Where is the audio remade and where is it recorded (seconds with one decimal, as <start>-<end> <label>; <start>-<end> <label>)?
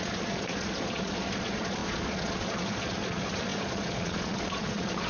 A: 0.0-5.1 remade